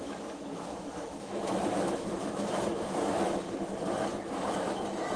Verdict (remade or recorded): remade